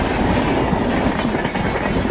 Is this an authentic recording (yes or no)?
yes